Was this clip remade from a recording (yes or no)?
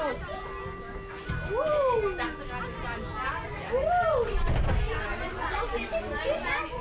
no